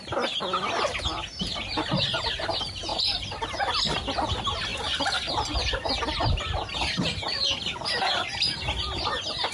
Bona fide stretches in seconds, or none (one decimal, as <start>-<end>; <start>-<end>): 0.0-9.5